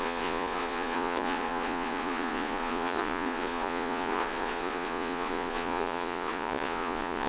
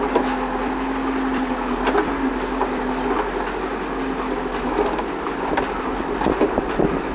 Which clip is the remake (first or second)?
first